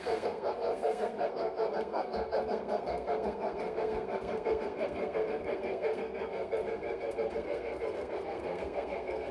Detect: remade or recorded remade